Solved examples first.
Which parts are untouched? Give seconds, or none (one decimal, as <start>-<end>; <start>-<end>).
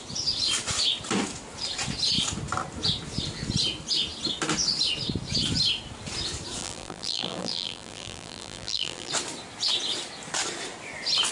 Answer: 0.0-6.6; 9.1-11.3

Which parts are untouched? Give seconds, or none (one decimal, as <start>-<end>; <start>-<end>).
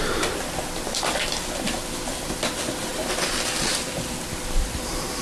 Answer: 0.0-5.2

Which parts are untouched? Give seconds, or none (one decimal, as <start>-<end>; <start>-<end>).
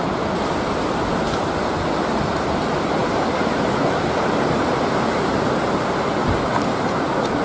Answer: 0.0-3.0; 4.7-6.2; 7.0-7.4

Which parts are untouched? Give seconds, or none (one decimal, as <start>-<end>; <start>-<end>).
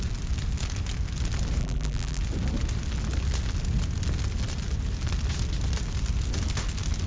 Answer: 0.0-1.6; 2.2-7.1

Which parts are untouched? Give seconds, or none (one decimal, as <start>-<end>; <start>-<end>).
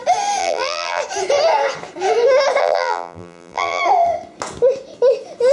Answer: 0.0-0.4; 1.0-2.6; 3.8-5.5